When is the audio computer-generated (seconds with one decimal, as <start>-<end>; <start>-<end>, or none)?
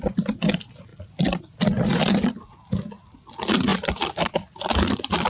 0.9-2.2; 3.7-5.3